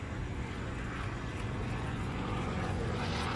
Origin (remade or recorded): remade